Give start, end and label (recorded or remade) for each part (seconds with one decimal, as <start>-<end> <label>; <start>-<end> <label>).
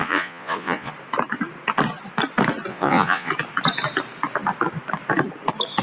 0.0-0.9 remade; 0.9-2.7 recorded; 2.7-3.3 remade; 3.3-5.8 recorded